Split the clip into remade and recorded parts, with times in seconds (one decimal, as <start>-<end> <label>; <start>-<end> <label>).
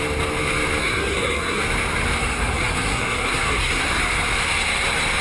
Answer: 0.0-0.8 recorded; 0.8-1.6 remade; 1.6-2.2 recorded; 2.2-4.0 remade; 4.0-5.2 recorded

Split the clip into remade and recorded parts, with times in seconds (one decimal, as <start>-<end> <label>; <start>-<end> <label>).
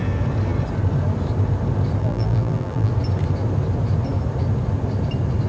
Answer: 0.0-2.0 recorded; 2.0-2.9 remade; 2.9-5.5 recorded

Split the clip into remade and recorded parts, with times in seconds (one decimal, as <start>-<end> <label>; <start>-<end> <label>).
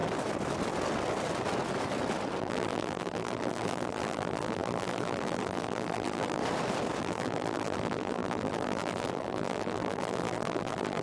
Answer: 0.0-2.4 recorded; 2.4-6.4 remade; 6.4-7.0 recorded; 7.0-11.0 remade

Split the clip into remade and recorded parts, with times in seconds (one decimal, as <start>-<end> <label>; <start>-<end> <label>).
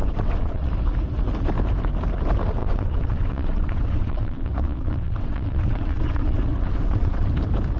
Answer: 0.0-0.7 remade; 0.7-2.6 recorded; 2.6-7.3 remade; 7.3-7.8 recorded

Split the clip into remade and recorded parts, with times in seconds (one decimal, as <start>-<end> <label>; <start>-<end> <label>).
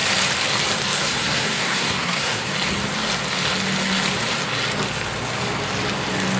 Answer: 0.0-1.0 recorded; 1.0-2.5 remade; 2.5-6.4 recorded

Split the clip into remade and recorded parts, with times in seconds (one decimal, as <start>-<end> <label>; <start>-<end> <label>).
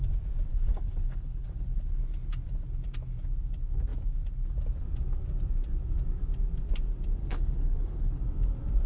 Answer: 0.0-0.5 recorded; 0.5-2.0 remade; 2.0-7.2 recorded; 7.2-8.2 remade; 8.2-8.9 recorded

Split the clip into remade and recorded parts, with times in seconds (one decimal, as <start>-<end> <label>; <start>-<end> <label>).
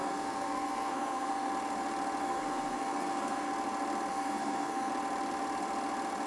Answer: 0.0-1.5 remade; 1.5-2.2 recorded; 2.2-3.5 remade; 3.5-4.1 recorded; 4.1-4.9 remade; 4.9-6.3 recorded